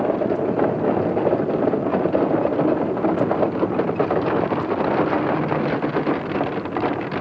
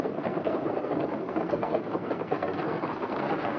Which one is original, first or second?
first